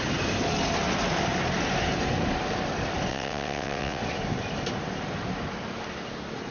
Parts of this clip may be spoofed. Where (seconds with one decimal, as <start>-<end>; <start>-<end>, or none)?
3.1-4.0